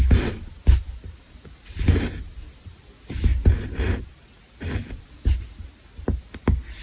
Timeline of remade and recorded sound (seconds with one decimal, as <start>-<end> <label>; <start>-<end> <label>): 0.0-6.8 recorded